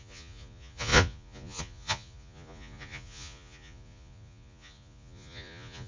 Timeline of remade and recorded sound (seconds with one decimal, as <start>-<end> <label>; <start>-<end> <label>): 0.0-5.9 remade